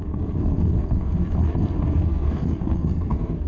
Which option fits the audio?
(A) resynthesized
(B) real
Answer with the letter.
A